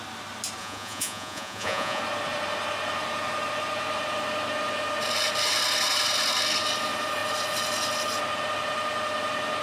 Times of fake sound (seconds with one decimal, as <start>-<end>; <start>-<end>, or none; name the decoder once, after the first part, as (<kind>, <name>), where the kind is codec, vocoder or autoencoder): 0.6-2.0 (vocoder, Vocos)